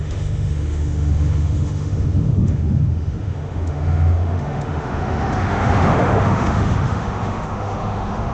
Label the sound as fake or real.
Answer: fake